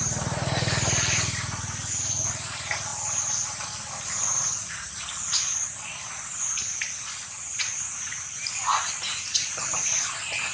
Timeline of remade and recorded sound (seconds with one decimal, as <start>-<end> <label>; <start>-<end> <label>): 0.0-10.5 recorded

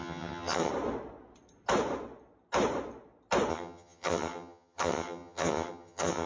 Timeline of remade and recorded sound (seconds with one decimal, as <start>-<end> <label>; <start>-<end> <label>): 0.0-0.7 remade; 0.7-3.5 recorded; 3.5-6.3 remade